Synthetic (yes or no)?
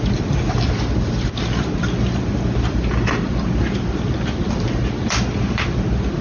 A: no